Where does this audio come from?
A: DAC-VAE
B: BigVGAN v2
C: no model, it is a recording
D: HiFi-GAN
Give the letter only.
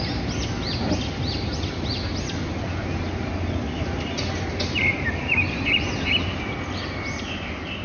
C